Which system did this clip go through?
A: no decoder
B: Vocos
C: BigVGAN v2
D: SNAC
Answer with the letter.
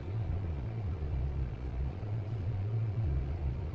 B